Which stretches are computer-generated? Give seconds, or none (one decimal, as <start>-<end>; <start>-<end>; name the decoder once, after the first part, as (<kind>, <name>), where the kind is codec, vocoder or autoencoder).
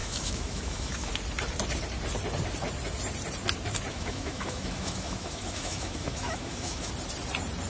0.0-1.1 (autoencoder, DAC-VAE); 3.9-6.9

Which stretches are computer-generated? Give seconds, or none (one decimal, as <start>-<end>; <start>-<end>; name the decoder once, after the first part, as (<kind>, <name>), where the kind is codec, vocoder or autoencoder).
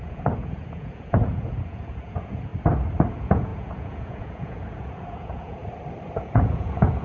0.0-2.5 (vocoder, Vocos); 3.1-5.6; 6.2-7.0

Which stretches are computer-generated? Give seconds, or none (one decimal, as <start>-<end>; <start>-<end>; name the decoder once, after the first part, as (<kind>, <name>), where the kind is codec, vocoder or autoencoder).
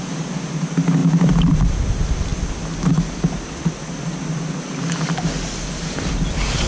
none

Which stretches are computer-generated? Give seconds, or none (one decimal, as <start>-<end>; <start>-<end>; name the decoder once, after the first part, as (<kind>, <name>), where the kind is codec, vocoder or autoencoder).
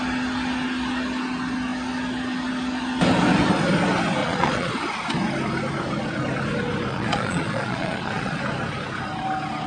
4.2-4.7 (vocoder, Vocos); 6.9-8.4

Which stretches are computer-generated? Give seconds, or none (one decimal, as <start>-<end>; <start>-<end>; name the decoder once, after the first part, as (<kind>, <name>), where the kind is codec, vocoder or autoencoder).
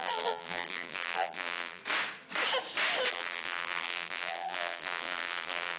0.0-1.8 (vocoder, BigVGAN v2); 3.1-5.8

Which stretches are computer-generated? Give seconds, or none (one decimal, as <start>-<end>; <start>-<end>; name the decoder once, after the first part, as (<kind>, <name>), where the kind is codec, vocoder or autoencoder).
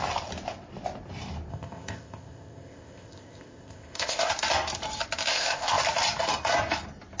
1.5-4.3 (codec, ZipCodec); 5.3-5.8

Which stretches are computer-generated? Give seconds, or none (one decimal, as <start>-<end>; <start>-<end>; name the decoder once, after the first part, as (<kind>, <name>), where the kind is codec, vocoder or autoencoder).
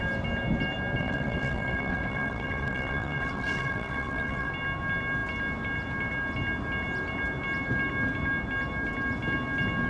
1.0-4.5 (vocoder, WaveNeXt)